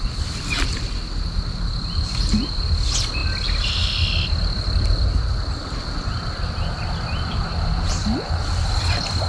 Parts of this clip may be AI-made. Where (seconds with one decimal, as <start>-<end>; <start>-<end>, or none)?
none